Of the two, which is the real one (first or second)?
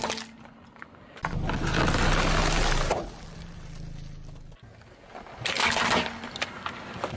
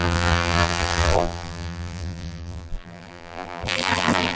first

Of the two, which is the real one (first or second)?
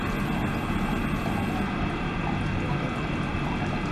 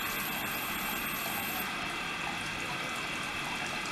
first